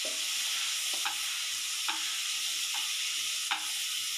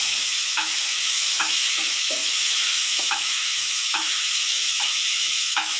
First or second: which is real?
first